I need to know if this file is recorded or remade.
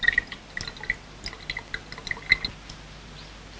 recorded